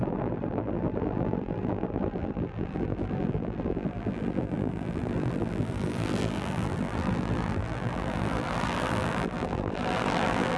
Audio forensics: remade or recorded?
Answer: remade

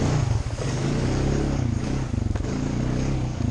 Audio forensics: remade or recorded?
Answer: remade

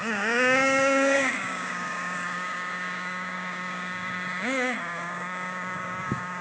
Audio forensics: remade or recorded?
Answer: remade